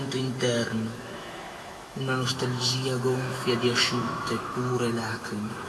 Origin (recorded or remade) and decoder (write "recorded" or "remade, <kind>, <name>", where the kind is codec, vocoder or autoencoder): remade, autoencoder, DAC-VAE